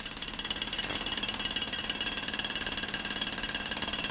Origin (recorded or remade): recorded